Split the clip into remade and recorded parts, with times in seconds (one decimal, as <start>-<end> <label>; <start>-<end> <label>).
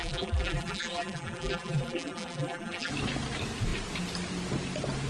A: 0.0-2.9 remade; 2.9-5.1 recorded